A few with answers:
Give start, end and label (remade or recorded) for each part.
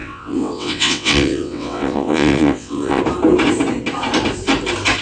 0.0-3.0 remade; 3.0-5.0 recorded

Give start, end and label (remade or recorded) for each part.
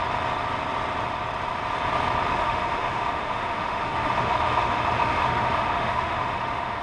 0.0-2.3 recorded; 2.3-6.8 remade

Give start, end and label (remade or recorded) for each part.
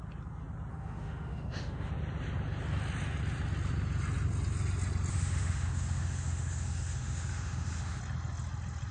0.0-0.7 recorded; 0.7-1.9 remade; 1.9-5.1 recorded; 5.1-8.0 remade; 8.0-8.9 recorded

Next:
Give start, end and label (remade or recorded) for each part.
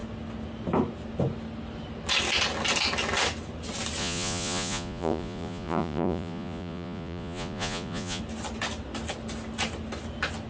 0.0-4.0 recorded; 4.0-8.2 remade; 8.2-10.5 recorded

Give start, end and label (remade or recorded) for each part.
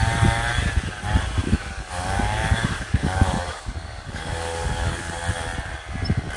0.0-1.4 recorded; 1.4-5.1 remade; 5.1-6.4 recorded